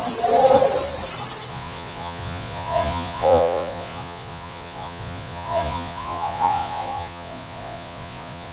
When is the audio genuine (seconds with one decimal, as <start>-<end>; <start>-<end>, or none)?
0.0-1.5